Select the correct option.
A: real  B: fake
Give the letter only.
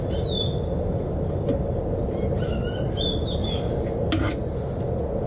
A